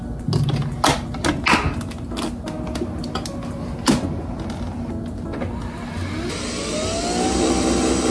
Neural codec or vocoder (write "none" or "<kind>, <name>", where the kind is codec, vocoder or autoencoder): none